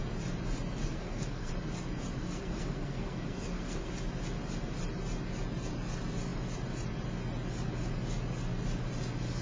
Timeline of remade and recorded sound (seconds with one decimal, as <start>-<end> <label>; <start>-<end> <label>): 0.0-0.8 recorded; 0.8-1.5 remade; 1.5-2.2 recorded; 2.2-3.9 remade; 3.9-9.4 recorded